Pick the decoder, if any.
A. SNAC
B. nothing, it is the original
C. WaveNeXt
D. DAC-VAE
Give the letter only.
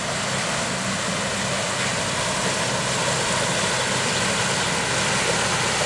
B